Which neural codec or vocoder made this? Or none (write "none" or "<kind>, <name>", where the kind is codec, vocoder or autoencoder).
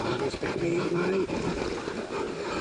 none